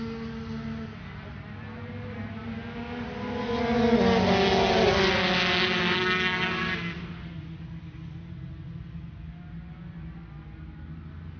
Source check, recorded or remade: recorded